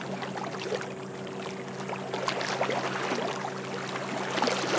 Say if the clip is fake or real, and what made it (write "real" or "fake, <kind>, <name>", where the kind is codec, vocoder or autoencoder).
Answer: real